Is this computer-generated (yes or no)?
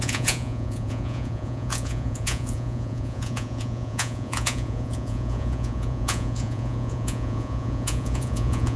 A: yes